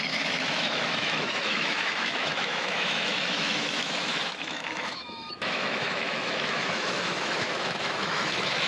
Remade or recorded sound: remade